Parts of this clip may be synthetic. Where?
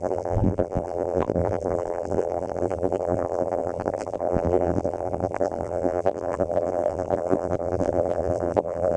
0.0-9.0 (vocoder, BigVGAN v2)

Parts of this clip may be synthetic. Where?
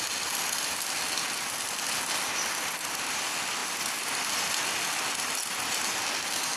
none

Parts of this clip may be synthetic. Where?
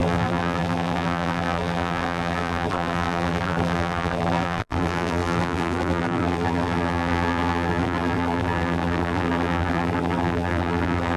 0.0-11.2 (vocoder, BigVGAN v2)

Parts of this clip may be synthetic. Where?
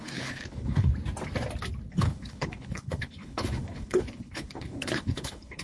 0.0-0.9 (codec, HILCodec); 1.9-5.6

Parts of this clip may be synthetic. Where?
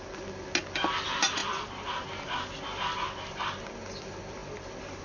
none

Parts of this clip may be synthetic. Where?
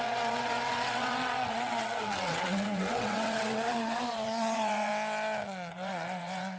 0.0-4.9 (vocoder, WaveNeXt); 5.7-6.6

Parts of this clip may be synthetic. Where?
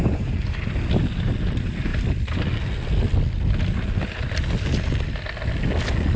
none